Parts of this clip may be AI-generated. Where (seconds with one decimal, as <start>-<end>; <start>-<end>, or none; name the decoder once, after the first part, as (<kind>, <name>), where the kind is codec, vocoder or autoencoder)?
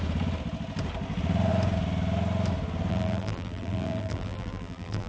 2.9-5.1 (vocoder, BigVGAN v2)